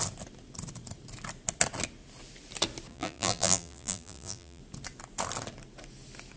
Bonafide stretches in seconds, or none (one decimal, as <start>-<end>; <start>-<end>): 0.0-2.9; 4.6-6.4